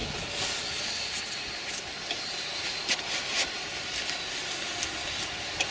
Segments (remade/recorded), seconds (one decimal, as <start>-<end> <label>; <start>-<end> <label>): 0.0-5.7 recorded